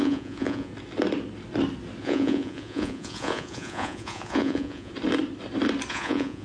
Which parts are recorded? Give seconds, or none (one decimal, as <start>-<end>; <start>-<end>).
0.7-2.0; 4.9-5.9